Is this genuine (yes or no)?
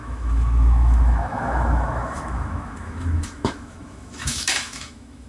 no